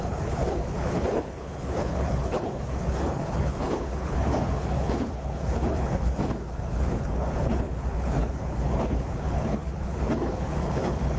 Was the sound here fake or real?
fake